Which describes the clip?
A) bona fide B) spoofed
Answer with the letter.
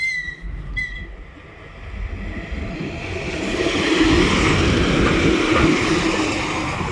A